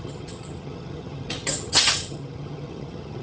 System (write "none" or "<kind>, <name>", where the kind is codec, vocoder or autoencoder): vocoder, HiFi-GAN